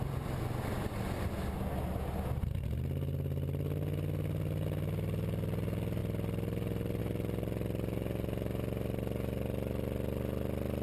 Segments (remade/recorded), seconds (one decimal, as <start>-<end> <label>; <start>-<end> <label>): 0.0-10.8 recorded